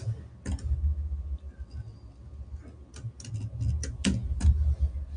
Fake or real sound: real